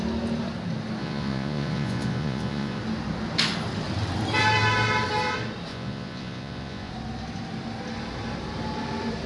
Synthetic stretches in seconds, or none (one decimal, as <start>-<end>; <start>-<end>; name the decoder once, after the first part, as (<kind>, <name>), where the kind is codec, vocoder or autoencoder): 1.0-2.8 (vocoder, Vocos); 5.7-6.9